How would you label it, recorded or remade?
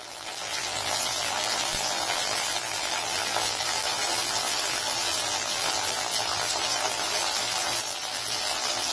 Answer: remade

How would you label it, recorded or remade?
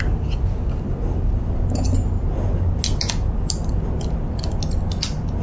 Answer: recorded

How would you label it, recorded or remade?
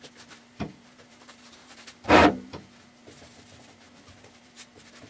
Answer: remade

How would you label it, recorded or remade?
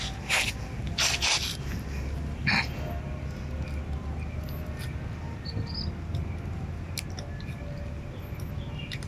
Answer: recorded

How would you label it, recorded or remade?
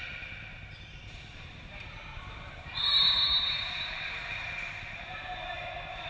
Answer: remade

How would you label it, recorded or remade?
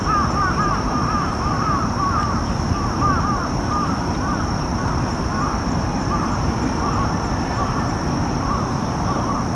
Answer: remade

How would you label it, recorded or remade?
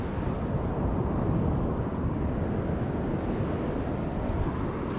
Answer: recorded